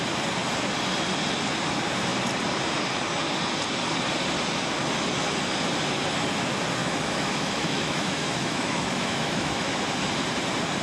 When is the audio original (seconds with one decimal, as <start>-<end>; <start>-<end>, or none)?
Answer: 0.0-6.8; 9.7-10.8